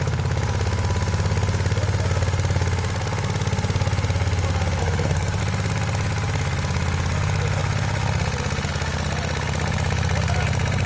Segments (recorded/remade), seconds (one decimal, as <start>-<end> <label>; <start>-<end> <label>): 0.0-4.8 recorded; 4.8-5.4 remade; 5.4-10.9 recorded

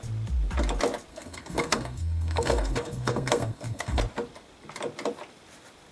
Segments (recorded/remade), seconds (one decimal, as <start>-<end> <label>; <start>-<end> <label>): 0.0-1.1 recorded; 1.1-4.0 remade; 4.0-5.9 recorded

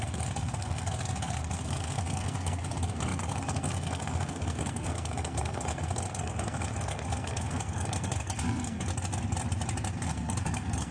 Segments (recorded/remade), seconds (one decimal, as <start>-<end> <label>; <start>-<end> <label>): 0.0-8.9 remade; 8.9-9.9 recorded; 9.9-10.9 remade